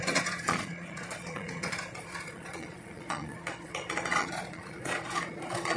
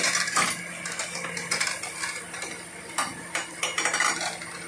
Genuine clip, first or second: second